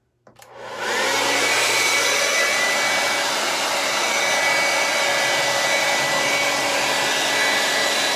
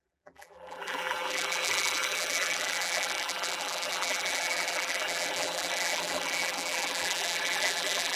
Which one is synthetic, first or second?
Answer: second